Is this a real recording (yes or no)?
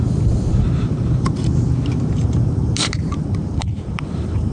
no